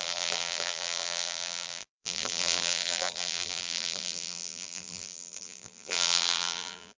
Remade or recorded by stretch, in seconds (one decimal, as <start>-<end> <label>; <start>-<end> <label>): 0.0-7.0 remade